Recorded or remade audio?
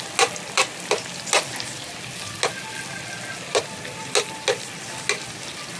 recorded